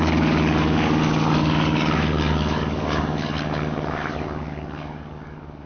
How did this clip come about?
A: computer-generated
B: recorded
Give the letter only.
A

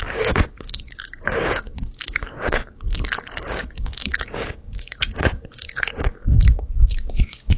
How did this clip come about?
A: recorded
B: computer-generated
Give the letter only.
B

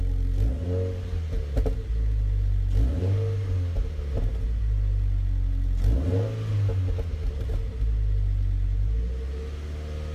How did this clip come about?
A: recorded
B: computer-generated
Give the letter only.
A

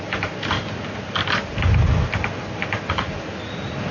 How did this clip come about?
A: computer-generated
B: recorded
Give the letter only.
B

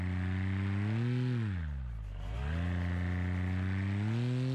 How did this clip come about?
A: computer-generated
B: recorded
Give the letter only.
B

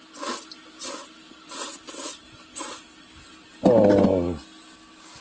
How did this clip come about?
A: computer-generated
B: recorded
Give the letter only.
B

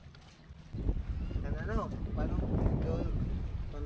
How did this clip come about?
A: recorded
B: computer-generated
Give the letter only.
A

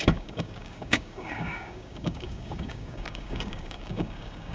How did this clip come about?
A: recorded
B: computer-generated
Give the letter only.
B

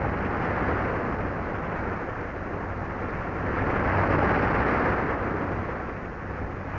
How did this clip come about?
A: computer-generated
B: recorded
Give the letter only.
B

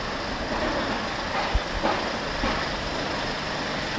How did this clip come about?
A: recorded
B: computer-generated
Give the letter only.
A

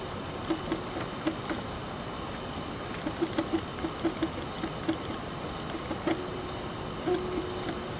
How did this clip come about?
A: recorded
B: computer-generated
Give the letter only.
A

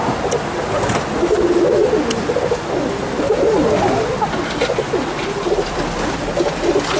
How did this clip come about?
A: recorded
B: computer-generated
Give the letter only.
A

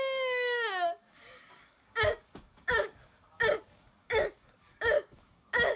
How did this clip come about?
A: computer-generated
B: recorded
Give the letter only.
A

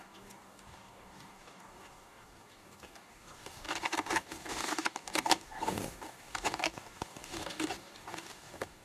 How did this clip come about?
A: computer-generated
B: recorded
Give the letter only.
A